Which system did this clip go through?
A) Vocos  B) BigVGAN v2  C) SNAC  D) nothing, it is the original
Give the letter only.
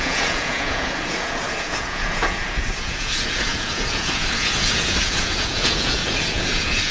A